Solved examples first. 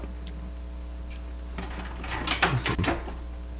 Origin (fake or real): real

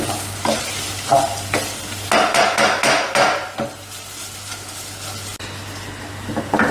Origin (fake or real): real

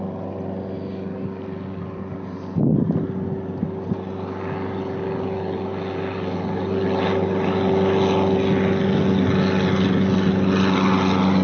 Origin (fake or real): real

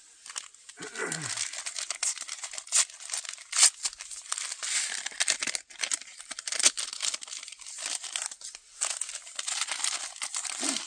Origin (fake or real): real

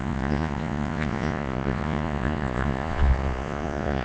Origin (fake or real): fake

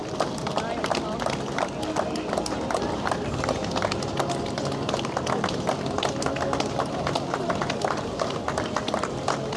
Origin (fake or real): real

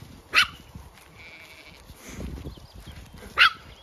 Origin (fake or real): real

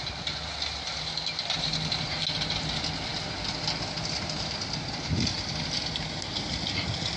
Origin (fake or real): real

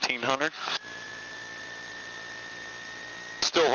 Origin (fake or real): real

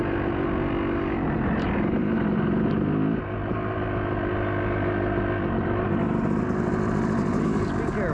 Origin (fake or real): real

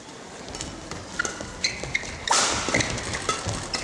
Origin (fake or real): real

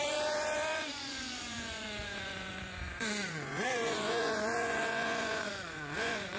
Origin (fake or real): fake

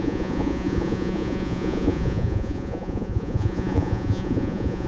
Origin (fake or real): fake